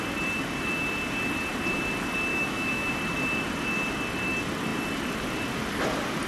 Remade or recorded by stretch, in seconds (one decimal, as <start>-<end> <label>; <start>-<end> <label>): 0.0-2.3 recorded; 2.3-2.9 remade; 2.9-6.3 recorded